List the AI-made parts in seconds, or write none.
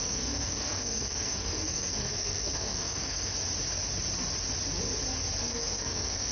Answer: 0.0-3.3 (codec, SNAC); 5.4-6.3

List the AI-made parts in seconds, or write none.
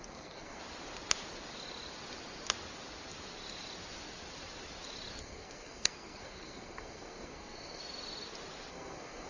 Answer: 0.0-0.6 (codec, SNAC); 5.2-7.8; 8.7-9.3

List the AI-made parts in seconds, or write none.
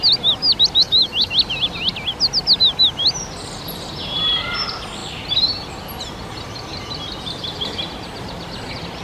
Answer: 0.8-1.3 (autoencoder, DAC-VAE)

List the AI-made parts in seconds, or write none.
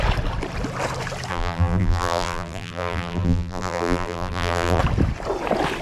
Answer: 1.3-4.8 (vocoder, BigVGAN v2)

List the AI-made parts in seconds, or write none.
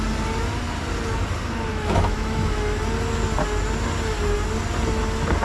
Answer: 1.7-2.8 (autoencoder, DAC-VAE)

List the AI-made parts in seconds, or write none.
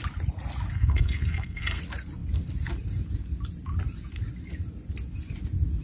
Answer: 0.7-1.8 (codec, SNAC)